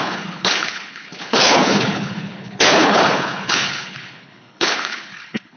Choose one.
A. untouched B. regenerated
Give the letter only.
B